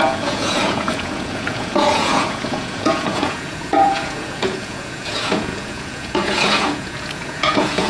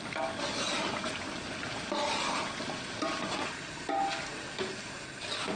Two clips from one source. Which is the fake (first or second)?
first